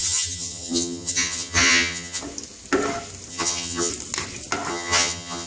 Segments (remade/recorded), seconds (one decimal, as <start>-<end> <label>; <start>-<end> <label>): 0.0-2.2 remade; 2.2-3.3 recorded; 3.3-3.9 remade; 3.9-4.7 recorded; 4.7-5.5 remade